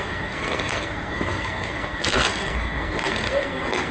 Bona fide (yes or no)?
no